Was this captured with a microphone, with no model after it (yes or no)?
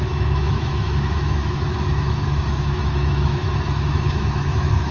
no